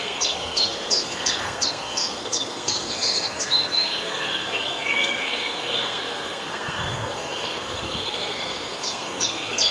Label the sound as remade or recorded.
remade